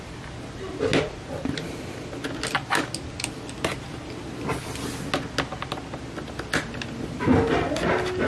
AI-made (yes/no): no